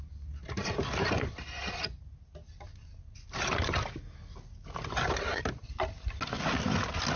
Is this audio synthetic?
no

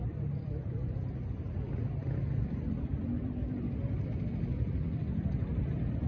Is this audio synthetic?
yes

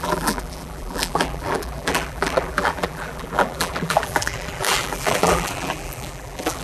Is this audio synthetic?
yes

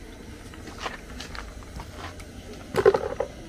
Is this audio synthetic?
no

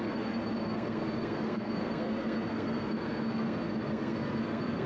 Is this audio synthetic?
yes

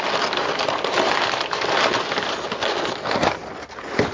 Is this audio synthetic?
no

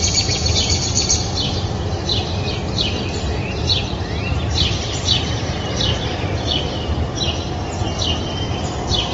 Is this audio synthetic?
yes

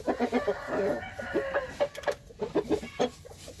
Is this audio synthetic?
no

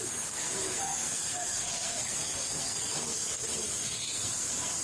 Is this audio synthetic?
yes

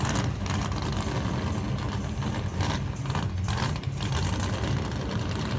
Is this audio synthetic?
no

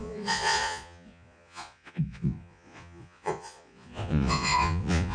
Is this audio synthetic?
yes